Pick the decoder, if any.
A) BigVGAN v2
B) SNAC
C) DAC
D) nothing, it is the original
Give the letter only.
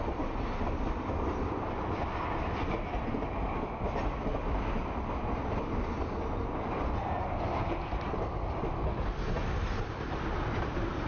D